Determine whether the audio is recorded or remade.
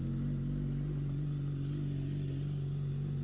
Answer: recorded